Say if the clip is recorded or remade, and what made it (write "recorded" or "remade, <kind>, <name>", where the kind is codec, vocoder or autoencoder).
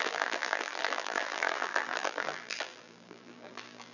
remade, vocoder, BigVGAN v2